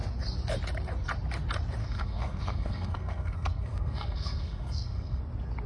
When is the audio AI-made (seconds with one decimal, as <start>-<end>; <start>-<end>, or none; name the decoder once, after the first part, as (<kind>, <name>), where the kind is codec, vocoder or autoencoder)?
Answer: 1.8-5.2 (codec, SNAC)